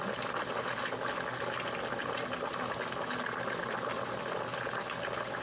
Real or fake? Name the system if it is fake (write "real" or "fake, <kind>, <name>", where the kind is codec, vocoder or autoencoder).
real